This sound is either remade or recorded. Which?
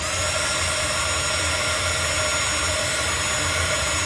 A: recorded